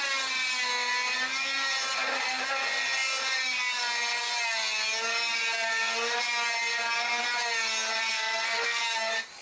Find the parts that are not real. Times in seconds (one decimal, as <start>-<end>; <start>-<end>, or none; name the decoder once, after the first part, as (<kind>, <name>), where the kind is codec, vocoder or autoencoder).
8.1-8.8 (codec, SNAC)